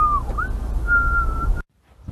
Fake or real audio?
real